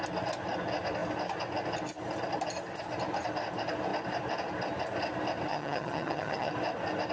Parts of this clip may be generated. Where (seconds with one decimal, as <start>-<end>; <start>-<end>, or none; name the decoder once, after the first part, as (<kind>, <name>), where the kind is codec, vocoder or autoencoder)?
5.5-6.5 (vocoder, HiFi-GAN)